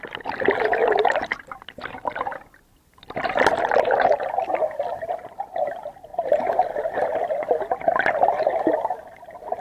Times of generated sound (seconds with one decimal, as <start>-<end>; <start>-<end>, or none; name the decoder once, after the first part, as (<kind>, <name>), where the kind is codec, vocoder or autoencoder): none